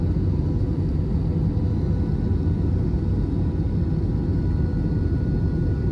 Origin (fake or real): real